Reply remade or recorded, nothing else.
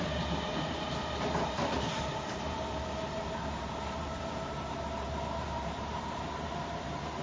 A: remade